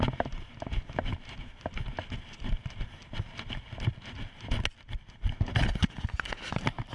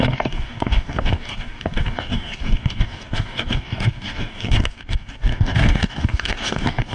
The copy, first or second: second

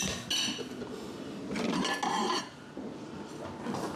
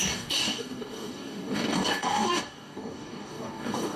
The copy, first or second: second